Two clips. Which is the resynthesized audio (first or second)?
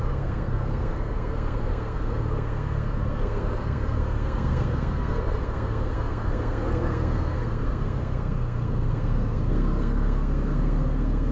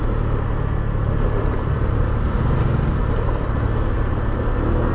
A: first